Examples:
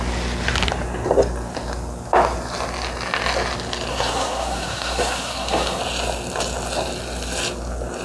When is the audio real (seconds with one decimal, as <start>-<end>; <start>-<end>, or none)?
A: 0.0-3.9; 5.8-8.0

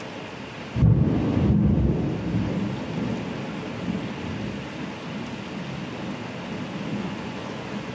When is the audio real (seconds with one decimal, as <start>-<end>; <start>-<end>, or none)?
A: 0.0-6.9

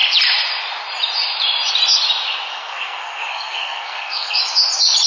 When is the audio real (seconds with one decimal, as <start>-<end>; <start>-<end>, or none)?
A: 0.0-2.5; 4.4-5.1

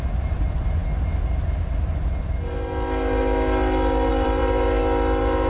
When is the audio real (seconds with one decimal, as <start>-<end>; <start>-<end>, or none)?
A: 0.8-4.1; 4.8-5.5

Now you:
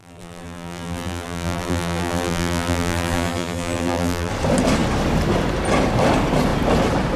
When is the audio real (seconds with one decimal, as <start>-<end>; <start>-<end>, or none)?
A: 4.3-7.2

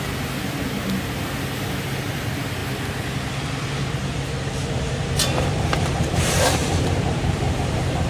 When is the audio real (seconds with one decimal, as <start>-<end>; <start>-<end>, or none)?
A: 2.6-3.8